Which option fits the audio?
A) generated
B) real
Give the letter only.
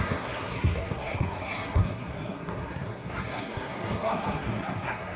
A